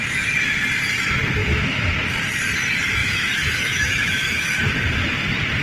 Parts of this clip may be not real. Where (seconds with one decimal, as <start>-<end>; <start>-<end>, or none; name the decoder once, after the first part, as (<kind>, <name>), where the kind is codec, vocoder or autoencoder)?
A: 1.4-1.9 (autoencoder, DAC-VAE); 3.0-4.6